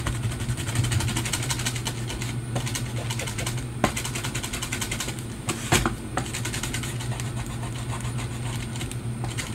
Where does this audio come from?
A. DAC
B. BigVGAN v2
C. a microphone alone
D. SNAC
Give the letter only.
C